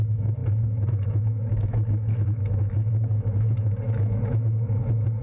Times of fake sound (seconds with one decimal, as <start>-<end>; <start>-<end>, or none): 0.0-5.2

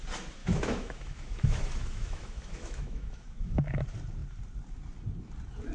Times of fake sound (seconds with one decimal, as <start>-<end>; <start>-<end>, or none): 0.4-3.8

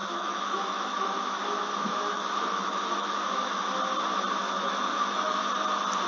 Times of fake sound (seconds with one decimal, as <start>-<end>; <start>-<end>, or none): 0.0-1.2; 1.9-3.6; 4.4-5.4

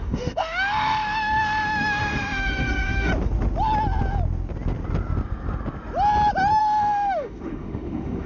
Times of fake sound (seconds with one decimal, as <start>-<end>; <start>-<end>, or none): 0.0-3.1; 6.6-8.3

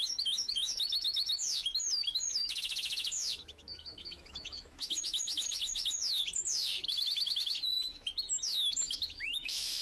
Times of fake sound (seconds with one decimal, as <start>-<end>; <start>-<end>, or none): 0.0-9.8

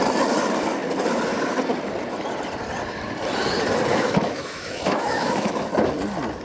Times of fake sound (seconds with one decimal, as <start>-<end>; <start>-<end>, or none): 3.9-5.7